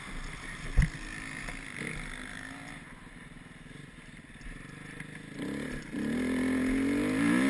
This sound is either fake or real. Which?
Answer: real